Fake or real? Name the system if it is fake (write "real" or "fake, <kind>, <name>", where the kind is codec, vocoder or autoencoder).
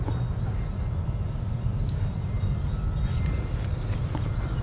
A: real